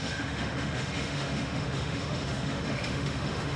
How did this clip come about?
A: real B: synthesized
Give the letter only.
B